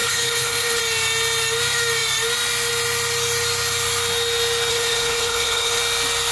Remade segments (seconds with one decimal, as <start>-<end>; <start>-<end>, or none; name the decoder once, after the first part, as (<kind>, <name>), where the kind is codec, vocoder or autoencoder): 0.0-0.8 (codec, HILCodec); 4.7-5.8